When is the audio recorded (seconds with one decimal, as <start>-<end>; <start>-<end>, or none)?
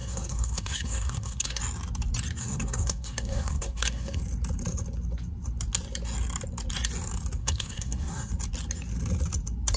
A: 1.6-2.4; 4.2-7.4; 8.3-9.8